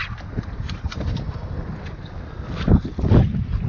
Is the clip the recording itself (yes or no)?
yes